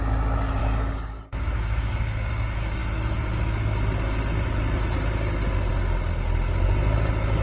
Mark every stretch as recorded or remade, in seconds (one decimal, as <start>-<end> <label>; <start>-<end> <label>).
0.0-0.6 recorded; 0.6-2.3 remade; 2.3-7.4 recorded

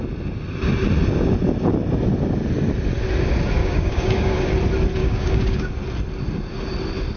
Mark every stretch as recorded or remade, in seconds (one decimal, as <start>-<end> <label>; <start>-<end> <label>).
0.0-3.6 recorded; 3.6-4.5 remade; 4.5-5.0 recorded; 5.0-5.7 remade; 5.7-7.2 recorded

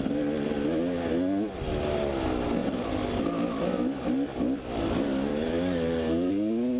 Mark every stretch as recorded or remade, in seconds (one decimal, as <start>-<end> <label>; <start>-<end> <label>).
0.0-5.3 recorded; 5.3-6.3 remade; 6.3-6.8 recorded

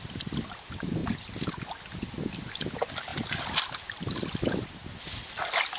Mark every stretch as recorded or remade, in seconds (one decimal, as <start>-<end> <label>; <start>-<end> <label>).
0.0-5.8 recorded

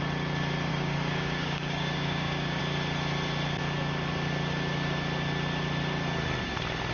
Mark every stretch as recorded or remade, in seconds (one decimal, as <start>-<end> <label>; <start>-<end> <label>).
0.0-0.7 recorded; 0.7-2.6 remade; 2.6-6.9 recorded

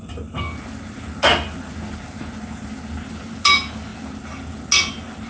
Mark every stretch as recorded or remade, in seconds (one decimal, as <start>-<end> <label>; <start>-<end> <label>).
0.0-5.3 recorded